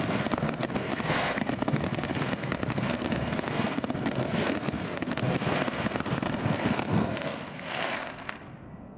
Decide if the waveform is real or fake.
fake